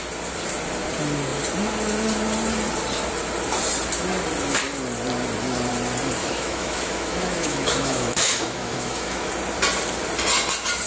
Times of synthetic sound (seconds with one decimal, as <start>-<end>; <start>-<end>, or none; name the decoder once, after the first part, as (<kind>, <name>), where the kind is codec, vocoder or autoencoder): 6.2-9.3 (autoencoder, DAC-VAE)